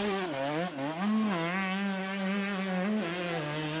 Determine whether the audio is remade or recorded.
recorded